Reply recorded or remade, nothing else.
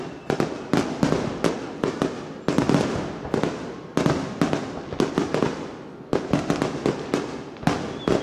recorded